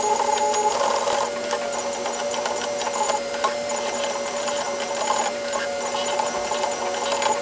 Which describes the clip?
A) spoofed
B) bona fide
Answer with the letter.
B